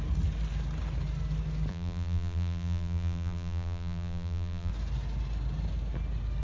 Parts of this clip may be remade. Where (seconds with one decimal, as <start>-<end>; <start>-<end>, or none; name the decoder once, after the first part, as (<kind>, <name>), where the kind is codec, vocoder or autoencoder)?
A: 1.7-4.7 (vocoder, BigVGAN v2)

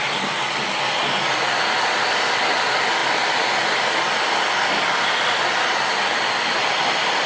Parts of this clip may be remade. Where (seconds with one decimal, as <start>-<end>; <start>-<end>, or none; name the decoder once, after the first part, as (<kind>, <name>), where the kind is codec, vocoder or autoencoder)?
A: none

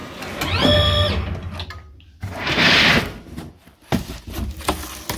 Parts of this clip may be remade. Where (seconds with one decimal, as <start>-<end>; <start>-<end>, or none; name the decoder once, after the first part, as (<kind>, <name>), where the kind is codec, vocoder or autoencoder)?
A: none